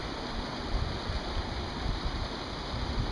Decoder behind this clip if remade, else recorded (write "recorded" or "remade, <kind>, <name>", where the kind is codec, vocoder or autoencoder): recorded